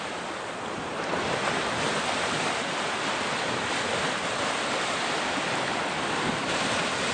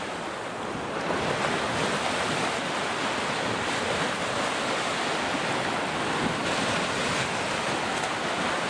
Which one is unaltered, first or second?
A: second